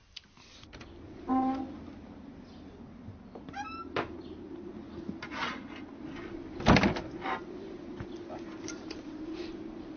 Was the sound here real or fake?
real